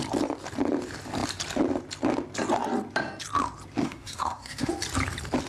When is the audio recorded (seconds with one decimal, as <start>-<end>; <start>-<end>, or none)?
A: 0.0-3.8; 4.7-5.5